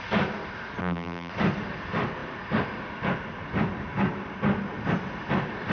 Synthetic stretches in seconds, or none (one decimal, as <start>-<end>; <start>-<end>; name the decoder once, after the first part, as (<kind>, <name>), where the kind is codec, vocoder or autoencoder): 0.8-1.3 (vocoder, BigVGAN v2)